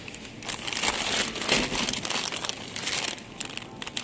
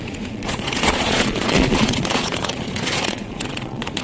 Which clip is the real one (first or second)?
first